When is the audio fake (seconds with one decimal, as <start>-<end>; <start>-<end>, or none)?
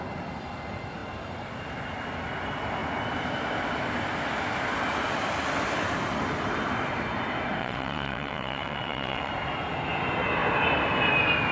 7.6-9.3